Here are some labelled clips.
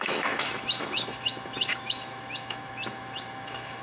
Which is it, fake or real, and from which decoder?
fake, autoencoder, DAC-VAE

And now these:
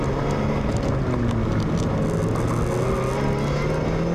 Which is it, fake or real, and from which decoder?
real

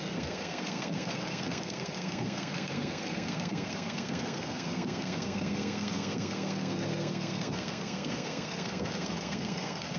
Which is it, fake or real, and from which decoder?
fake, codec, SNAC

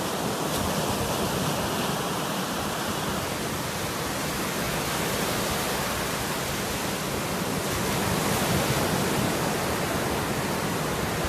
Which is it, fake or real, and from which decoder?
real